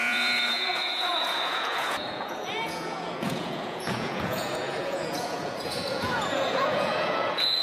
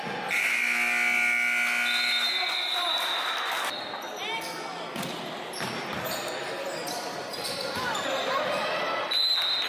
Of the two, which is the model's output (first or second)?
first